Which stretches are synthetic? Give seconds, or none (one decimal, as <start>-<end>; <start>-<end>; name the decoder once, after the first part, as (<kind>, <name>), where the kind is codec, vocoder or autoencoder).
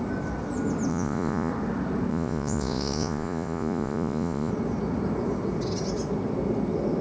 0.9-1.5 (vocoder, Vocos); 2.1-4.5